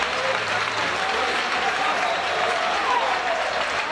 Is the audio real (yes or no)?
no